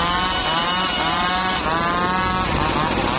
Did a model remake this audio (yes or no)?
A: no